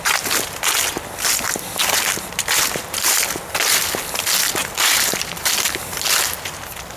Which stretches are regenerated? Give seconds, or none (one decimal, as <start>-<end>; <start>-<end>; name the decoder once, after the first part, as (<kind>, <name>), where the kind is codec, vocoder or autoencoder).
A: 4.6-5.2 (vocoder, BigVGAN v2)